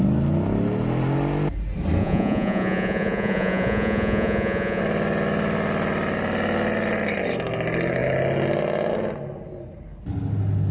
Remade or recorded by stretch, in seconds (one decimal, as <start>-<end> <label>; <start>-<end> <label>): 0.0-2.0 recorded; 2.0-4.8 remade; 4.8-10.7 recorded